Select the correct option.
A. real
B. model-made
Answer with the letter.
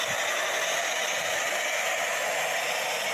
A